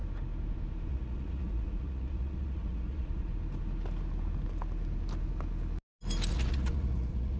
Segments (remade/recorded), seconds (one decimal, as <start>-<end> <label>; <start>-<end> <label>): 0.0-0.9 recorded; 0.9-3.3 remade; 3.3-6.3 recorded; 6.3-7.4 remade